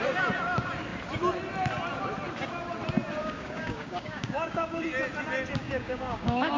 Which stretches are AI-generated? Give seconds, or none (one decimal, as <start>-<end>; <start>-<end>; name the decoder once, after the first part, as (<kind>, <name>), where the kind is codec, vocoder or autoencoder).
3.2-4.8 (codec, DAC); 5.6-6.6